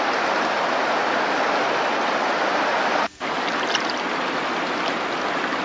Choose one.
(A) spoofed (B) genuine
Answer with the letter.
B